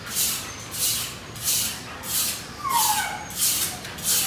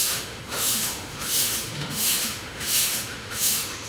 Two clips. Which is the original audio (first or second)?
first